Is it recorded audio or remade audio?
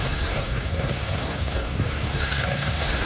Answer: remade